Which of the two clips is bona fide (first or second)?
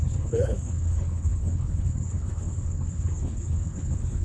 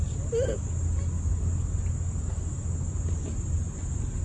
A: second